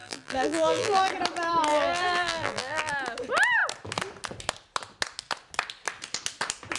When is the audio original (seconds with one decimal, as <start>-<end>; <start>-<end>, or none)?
1.1-1.7; 2.9-6.8

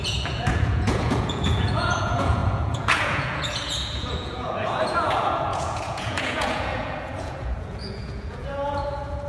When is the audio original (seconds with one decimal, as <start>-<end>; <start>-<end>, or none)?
none